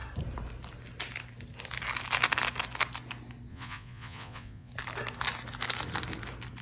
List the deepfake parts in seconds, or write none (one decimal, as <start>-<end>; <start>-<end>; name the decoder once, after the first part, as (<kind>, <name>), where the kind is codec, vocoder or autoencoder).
3.5-4.7 (vocoder, Vocos)